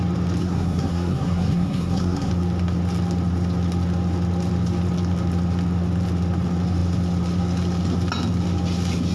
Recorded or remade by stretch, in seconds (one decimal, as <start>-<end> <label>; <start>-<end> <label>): 0.0-0.4 recorded; 0.4-2.3 remade; 2.3-9.1 recorded